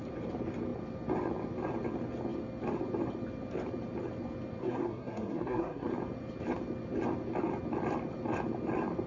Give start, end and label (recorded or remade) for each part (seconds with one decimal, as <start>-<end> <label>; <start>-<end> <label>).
0.0-4.6 recorded; 4.6-5.9 remade; 5.9-9.1 recorded